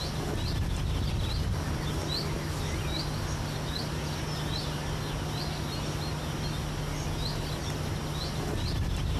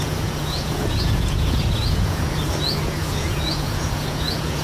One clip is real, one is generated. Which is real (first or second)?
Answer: first